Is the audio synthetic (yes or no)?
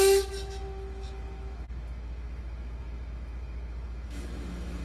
yes